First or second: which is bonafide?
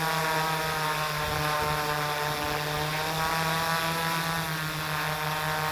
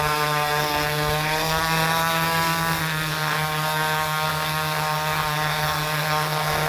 first